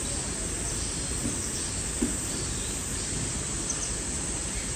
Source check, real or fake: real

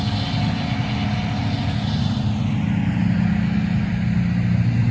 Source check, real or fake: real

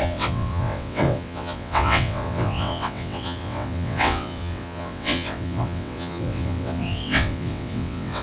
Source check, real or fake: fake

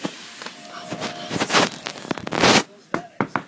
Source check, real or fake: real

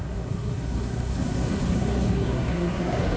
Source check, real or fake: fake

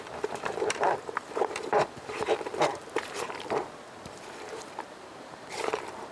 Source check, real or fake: fake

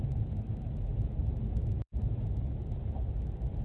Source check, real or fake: real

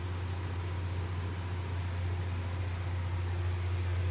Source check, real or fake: real